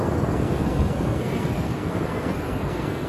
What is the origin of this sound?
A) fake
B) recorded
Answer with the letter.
A